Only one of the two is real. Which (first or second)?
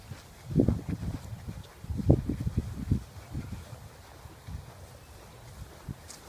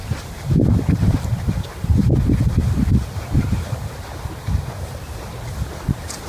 first